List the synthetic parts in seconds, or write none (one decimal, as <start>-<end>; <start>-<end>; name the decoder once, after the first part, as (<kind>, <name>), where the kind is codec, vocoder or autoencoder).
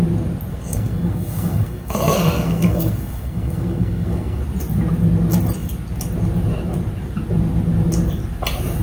0.5-4.4 (codec, SNAC)